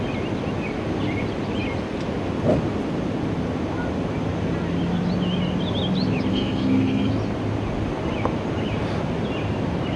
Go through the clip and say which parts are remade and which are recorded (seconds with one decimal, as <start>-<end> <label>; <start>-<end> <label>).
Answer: 0.0-6.3 recorded; 6.3-7.1 remade; 7.1-10.0 recorded